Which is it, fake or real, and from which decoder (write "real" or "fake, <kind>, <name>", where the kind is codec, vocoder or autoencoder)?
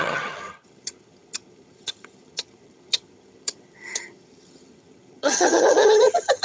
fake, vocoder, HiFi-GAN